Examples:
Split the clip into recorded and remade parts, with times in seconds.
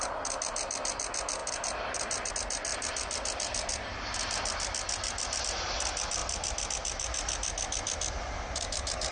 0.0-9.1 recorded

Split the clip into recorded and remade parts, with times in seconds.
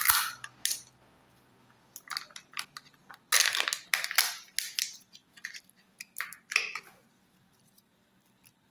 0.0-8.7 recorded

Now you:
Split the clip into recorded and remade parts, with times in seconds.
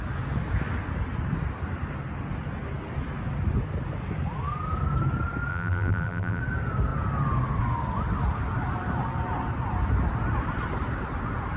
0.0-5.5 recorded; 5.5-6.4 remade; 6.4-11.6 recorded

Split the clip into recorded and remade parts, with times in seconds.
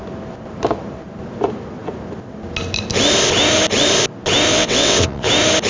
0.0-4.5 recorded; 4.5-5.3 remade; 5.3-5.7 recorded